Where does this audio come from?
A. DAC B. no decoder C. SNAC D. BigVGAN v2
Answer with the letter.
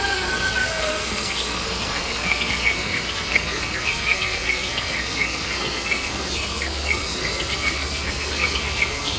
C